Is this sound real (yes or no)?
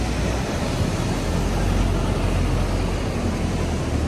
yes